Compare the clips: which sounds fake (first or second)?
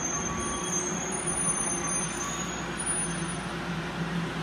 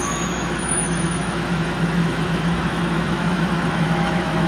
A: second